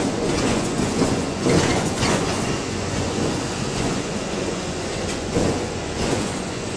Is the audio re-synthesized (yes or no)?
yes